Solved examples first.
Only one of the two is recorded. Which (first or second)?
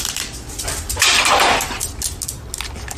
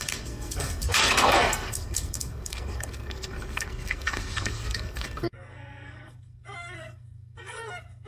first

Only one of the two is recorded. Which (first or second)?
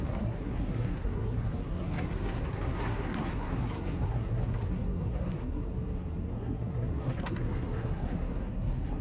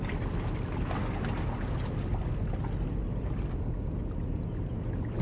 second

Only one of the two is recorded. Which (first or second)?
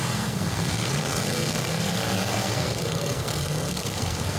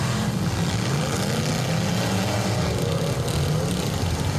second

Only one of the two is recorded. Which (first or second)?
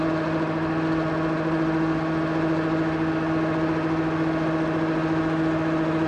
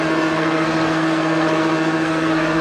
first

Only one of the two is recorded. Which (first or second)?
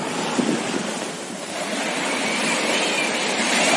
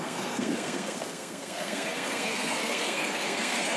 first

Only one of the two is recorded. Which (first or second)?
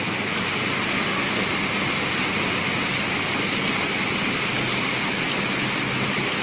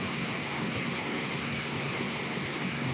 first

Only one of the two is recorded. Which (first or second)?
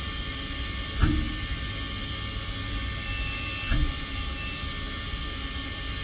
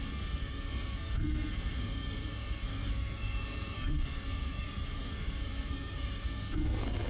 first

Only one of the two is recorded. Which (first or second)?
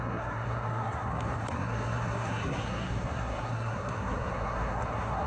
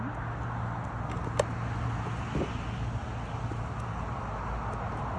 second